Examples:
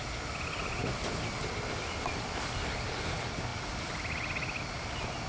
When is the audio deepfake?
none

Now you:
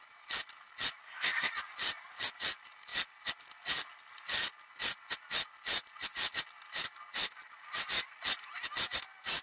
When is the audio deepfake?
1.0-1.5 (codec, SNAC)

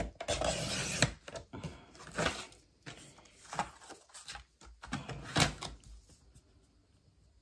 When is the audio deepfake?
none

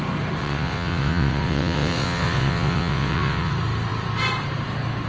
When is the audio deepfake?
0.4-3.5 (vocoder, WaveNeXt)

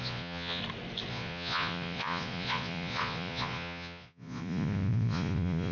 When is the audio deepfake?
0.0-0.6 (vocoder, Vocos); 1.1-5.7

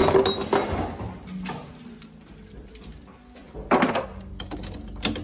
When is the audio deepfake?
none

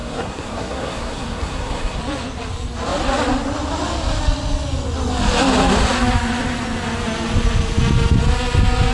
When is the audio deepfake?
0.0-2.0 (codec, SNAC)